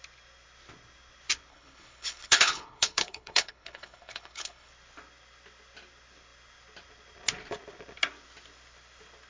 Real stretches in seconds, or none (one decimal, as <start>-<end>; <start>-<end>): 0.0-1.5; 4.7-9.3